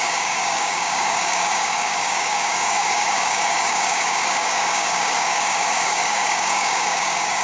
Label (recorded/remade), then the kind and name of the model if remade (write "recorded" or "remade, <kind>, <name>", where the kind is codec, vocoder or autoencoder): remade, codec, DAC